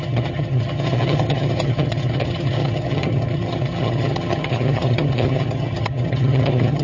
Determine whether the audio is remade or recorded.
remade